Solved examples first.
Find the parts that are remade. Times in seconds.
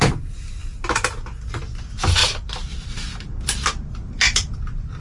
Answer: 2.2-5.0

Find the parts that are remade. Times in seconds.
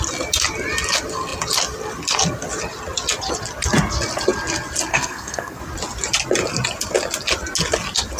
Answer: 4.9-5.6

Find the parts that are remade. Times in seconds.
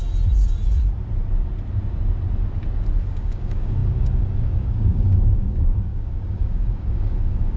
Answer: 3.1-7.6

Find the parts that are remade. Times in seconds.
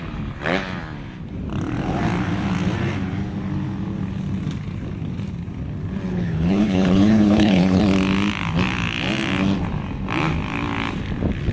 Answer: 6.1-7.8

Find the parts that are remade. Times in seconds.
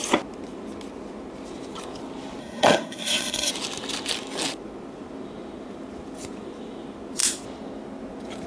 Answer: 2.4-3.5